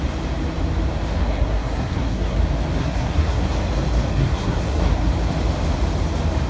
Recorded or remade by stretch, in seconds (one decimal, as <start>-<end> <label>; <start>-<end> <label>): 0.0-1.2 recorded; 1.2-2.4 remade; 2.4-2.8 recorded; 2.8-3.5 remade; 3.5-4.1 recorded; 4.1-5.1 remade; 5.1-6.5 recorded